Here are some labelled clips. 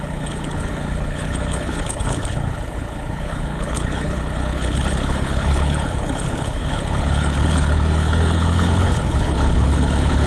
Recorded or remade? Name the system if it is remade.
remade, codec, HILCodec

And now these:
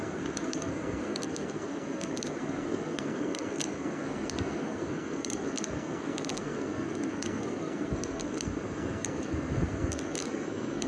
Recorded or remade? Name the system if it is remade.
remade, codec, SNAC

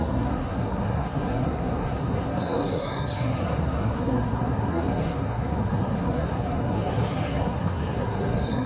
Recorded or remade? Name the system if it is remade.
remade, codec, SNAC